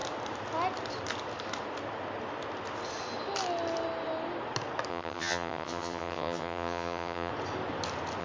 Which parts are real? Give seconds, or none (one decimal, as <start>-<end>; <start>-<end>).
0.0-4.9; 7.3-8.2

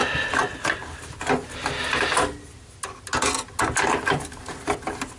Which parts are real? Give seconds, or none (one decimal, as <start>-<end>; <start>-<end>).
0.0-5.2